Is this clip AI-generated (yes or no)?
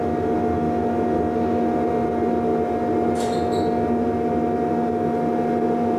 no